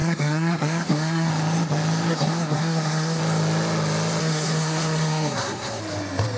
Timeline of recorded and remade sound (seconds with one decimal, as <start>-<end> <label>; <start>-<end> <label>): 0.0-1.3 remade; 1.3-2.1 recorded; 2.1-3.2 remade; 3.2-4.2 recorded; 4.2-5.8 remade; 5.8-6.4 recorded

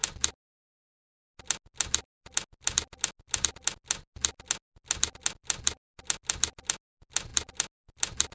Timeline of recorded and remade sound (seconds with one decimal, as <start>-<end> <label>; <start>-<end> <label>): 0.0-8.3 recorded